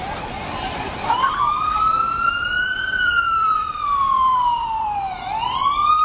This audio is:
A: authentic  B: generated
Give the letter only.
B